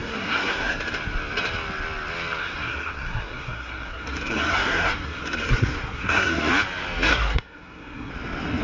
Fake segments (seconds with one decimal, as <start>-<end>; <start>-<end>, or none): 0.0-0.8; 2.4-6.5; 7.1-8.1